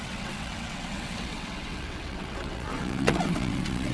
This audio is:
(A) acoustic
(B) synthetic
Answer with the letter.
B